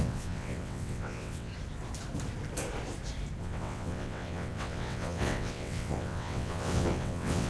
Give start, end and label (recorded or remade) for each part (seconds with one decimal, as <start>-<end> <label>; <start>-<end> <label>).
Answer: 0.0-1.5 remade; 1.5-3.4 recorded; 3.4-7.5 remade